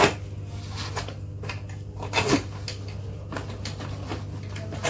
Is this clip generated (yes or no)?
no